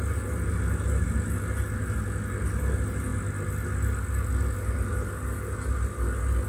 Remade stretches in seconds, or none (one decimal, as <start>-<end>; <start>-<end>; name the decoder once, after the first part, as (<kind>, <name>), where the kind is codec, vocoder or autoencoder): none